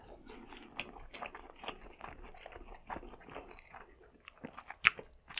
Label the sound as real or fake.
real